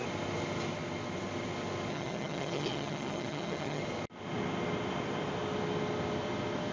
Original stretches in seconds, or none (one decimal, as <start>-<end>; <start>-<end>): 0.0-1.9; 3.8-6.7